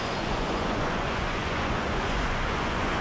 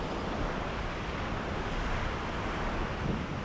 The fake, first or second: first